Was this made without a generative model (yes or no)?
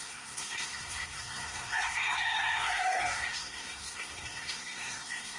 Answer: no